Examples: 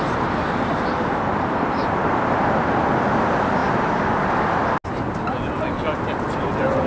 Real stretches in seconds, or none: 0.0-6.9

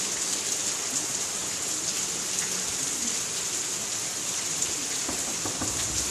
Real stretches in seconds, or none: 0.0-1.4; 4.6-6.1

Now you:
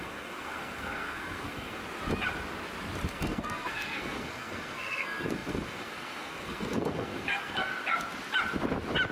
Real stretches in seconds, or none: 1.8-3.1; 7.7-9.1

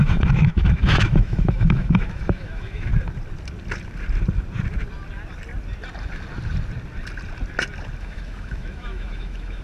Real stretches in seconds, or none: 2.9-8.0

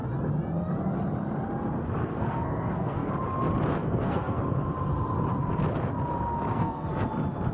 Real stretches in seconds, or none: 0.0-2.0; 3.1-3.8; 4.4-6.5; 7.1-7.5

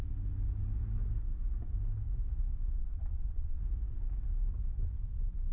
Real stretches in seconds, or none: 0.0-2.8; 3.6-5.5

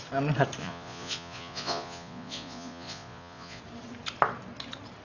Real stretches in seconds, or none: 0.0-0.6; 3.6-5.0